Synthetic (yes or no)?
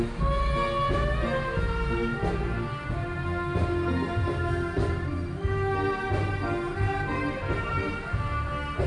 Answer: no